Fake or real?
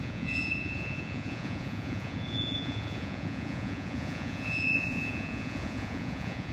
fake